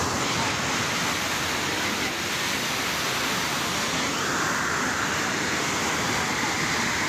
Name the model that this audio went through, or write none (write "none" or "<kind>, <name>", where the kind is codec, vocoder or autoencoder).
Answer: none